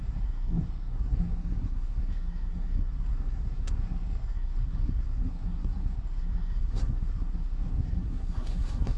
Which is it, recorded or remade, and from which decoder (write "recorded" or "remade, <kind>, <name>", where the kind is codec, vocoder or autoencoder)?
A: remade, codec, SNAC